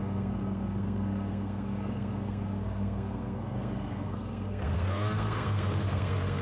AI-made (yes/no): yes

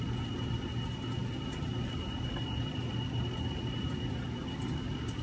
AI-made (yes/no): no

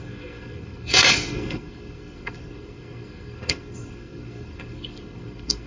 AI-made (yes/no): yes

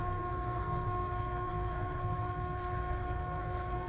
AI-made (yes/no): yes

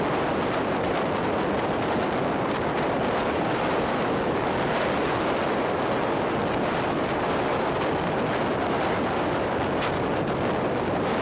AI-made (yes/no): no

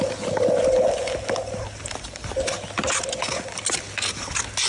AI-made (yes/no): no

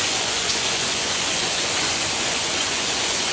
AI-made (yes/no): yes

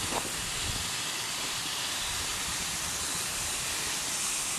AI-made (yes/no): no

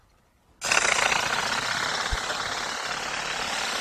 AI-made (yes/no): no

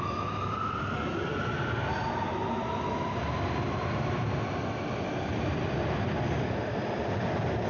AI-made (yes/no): no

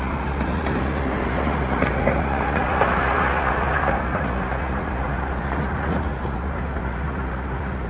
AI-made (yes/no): yes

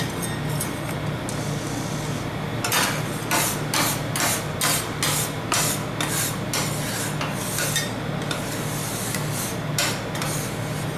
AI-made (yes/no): no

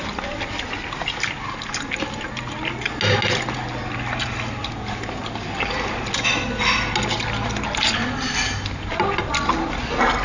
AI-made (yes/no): no